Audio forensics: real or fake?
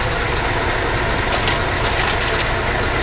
real